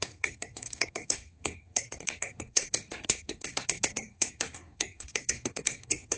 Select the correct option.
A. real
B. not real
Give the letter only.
B